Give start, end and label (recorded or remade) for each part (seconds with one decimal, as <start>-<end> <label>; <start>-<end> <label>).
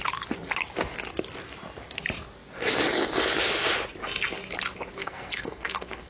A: 0.0-5.0 recorded; 5.0-6.1 remade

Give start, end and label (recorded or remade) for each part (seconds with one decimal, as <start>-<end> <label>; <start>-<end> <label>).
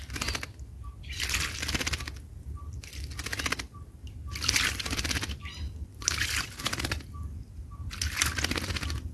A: 0.0-5.9 recorded; 5.9-6.8 remade; 6.8-9.1 recorded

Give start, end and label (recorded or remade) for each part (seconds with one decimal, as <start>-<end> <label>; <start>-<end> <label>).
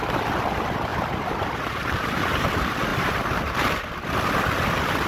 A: 0.0-0.9 recorded; 0.9-2.5 remade; 2.5-2.9 recorded; 2.9-3.9 remade; 3.9-5.1 recorded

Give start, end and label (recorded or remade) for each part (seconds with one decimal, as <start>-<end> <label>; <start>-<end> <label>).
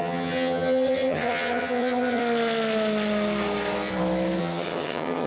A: 0.0-2.2 remade; 2.2-4.4 recorded; 4.4-5.3 remade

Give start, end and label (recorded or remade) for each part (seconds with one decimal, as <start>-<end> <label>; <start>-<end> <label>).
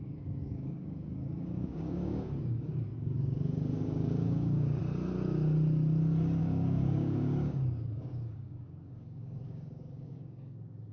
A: 0.0-4.8 remade; 4.8-6.4 recorded; 6.4-10.9 remade